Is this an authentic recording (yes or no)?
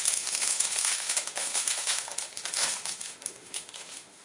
no